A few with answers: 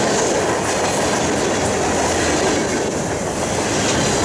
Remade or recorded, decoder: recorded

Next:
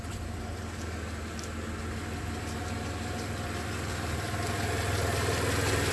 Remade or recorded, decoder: recorded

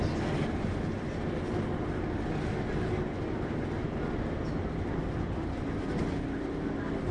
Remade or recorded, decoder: recorded